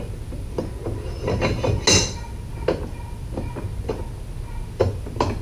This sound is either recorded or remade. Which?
recorded